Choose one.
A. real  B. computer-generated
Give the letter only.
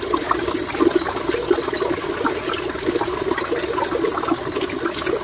A